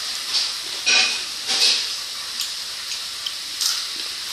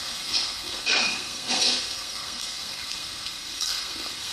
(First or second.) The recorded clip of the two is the first